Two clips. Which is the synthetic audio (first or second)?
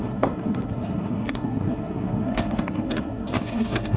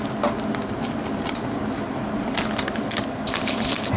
first